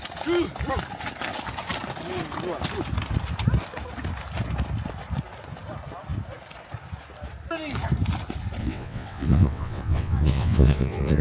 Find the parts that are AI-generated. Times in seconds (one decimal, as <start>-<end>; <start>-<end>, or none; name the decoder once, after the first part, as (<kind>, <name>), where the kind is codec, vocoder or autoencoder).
8.6-11.2 (vocoder, WaveNeXt)